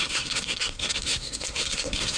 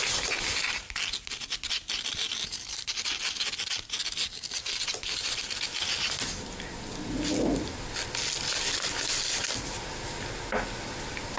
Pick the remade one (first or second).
first